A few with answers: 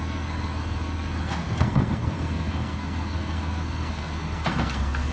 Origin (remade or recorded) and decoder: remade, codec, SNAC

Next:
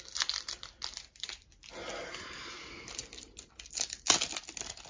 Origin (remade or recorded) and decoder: recorded